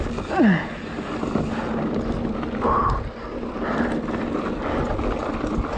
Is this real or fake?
real